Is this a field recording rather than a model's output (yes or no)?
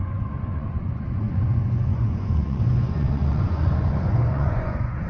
no